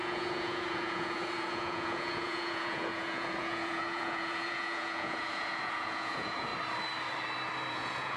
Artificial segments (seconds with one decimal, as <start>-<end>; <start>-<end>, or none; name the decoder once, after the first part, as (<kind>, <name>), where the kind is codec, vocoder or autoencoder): 0.0-6.5 (vocoder, Vocos); 7.7-8.2